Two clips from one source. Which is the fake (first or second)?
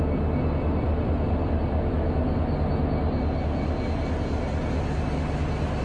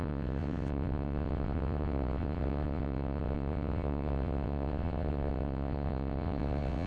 second